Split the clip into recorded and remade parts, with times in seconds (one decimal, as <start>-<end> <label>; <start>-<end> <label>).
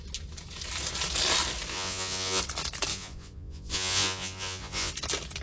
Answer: 0.0-1.7 recorded; 1.7-2.4 remade; 2.4-2.9 recorded; 2.9-4.9 remade; 4.9-5.4 recorded